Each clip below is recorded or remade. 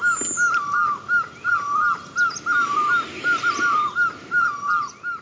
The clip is recorded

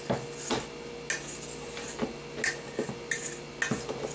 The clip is recorded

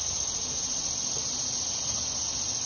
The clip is recorded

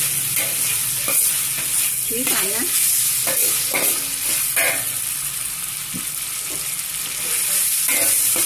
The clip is recorded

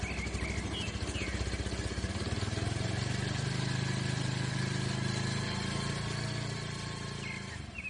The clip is recorded